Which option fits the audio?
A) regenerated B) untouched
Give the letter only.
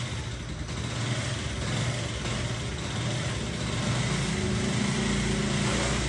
B